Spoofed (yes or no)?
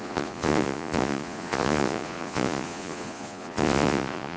yes